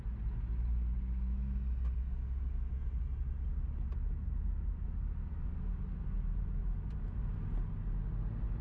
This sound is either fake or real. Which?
real